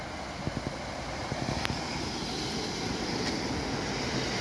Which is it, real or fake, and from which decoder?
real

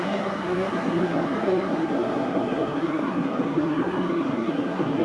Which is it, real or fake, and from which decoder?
fake, codec, SNAC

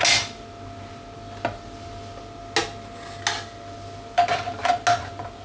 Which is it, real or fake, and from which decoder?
real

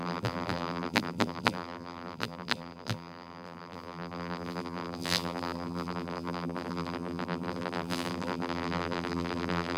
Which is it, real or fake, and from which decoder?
fake, vocoder, BigVGAN v2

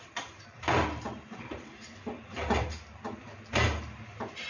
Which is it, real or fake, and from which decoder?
fake, vocoder, BigVGAN v2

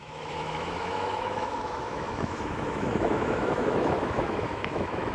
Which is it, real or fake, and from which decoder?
fake, autoencoder, DAC-VAE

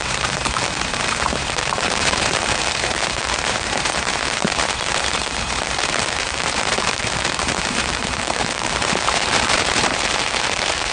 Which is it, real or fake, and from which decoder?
fake, vocoder, BigVGAN v2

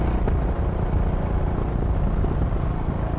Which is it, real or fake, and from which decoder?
real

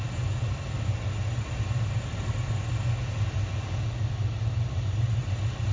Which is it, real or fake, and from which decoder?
real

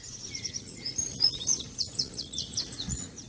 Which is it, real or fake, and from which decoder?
fake, vocoder, Vocos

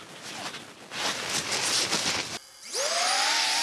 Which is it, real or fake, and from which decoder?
real